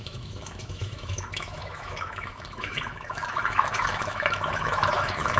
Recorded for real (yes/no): no